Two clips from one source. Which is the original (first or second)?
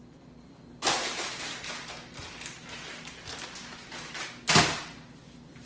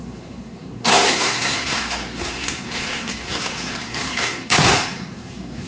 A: first